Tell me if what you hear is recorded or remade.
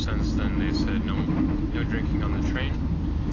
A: recorded